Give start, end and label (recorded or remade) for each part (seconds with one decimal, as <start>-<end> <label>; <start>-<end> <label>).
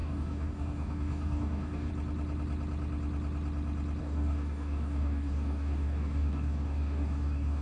0.0-1.9 remade; 1.9-4.0 recorded; 4.0-7.6 remade